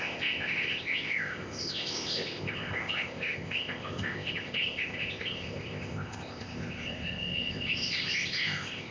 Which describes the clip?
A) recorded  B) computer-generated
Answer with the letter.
B